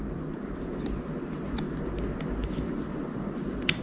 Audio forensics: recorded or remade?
remade